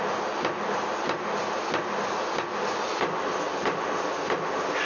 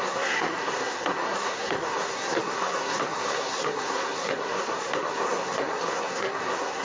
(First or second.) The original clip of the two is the first